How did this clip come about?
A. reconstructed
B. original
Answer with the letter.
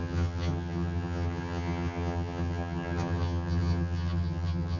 A